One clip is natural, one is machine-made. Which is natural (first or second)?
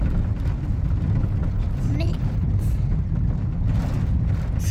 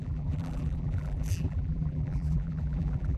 first